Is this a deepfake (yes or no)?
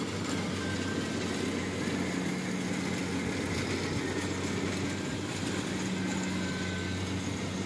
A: no